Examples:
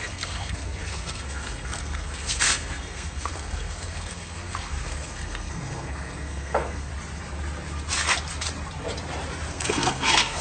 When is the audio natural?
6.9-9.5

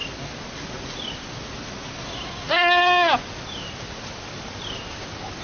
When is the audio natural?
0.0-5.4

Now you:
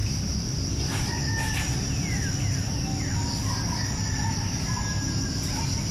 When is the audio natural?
0.0-5.9